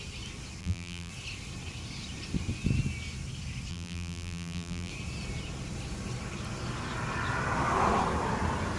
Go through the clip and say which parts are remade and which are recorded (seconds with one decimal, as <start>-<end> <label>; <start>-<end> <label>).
0.0-0.6 recorded; 0.6-1.1 remade; 1.1-3.7 recorded; 3.7-4.9 remade; 4.9-8.8 recorded